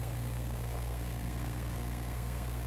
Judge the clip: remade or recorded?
remade